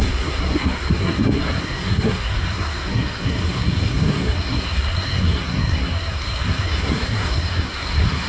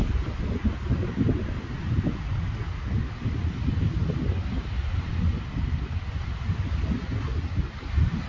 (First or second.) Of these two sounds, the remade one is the first